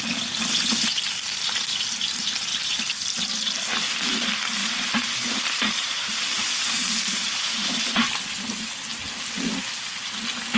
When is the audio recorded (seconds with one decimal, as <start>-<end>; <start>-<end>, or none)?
0.0-4.6; 7.7-10.6